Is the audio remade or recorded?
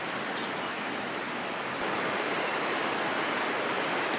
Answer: recorded